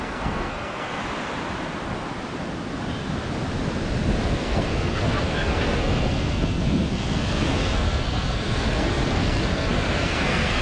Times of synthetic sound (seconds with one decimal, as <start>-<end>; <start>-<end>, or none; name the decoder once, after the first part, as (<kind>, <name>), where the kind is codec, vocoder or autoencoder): 0.0-1.0 (codec, SNAC); 4.2-10.6